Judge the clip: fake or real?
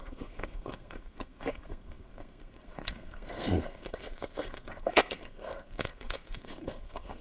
fake